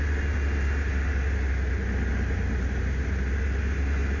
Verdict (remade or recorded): recorded